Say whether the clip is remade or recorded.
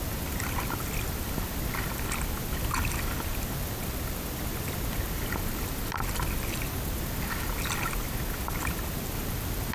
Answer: recorded